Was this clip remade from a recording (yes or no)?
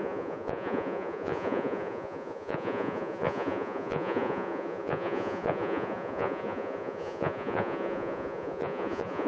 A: yes